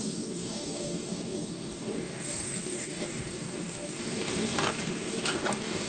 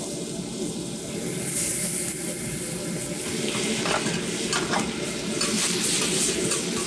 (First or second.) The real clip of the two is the second